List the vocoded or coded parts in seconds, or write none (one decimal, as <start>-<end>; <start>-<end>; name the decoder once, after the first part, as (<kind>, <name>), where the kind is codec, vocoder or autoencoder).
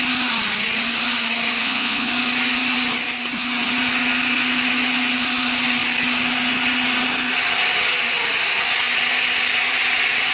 1.6-2.1 (vocoder, Vocos)